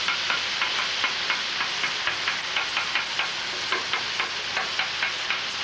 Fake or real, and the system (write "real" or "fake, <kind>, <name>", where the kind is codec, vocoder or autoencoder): real